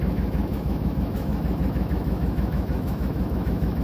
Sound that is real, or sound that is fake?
fake